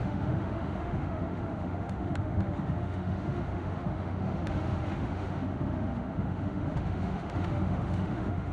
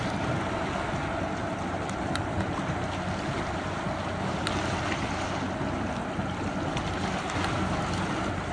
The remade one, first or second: first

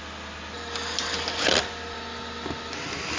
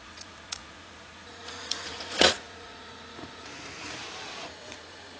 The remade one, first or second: second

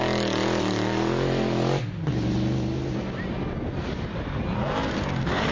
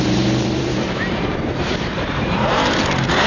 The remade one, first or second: second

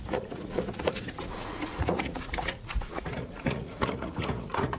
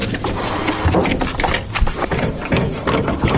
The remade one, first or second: first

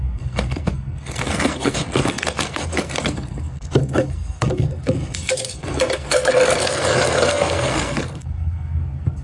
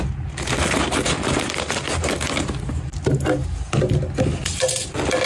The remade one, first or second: first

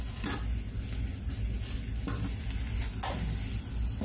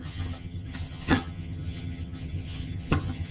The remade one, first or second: second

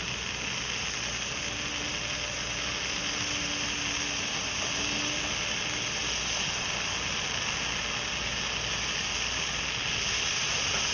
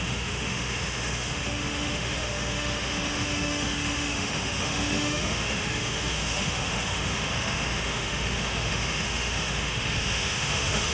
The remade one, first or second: second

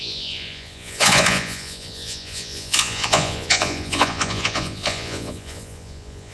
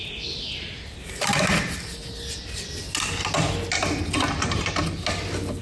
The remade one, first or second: first